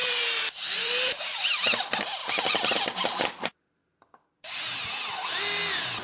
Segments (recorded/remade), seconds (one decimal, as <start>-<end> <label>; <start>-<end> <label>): 0.0-1.5 remade; 1.5-2.2 recorded; 2.2-3.3 remade; 3.3-6.0 recorded